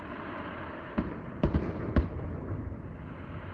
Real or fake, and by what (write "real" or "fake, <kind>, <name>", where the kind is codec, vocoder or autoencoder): real